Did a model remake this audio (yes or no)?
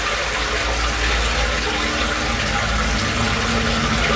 no